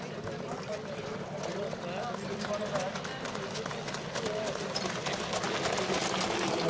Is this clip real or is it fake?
real